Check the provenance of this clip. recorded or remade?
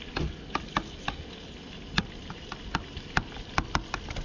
recorded